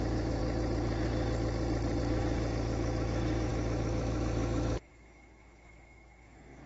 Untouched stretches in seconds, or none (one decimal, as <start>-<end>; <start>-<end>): 0.4-2.0